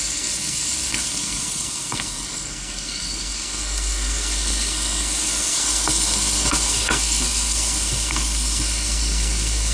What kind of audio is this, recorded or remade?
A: remade